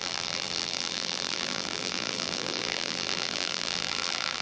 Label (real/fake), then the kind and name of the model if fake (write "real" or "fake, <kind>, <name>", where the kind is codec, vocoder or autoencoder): fake, vocoder, BigVGAN v2